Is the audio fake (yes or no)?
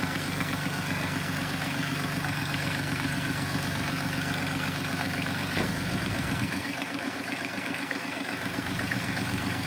yes